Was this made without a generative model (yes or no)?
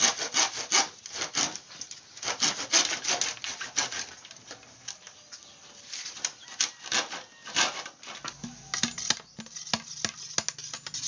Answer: yes